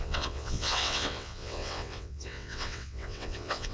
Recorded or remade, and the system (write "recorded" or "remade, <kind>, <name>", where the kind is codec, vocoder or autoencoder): remade, vocoder, WaveNeXt